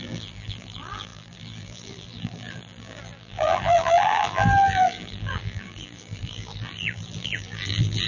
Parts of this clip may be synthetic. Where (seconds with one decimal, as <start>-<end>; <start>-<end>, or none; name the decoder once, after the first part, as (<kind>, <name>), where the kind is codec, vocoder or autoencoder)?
0.0-8.1 (vocoder, BigVGAN v2)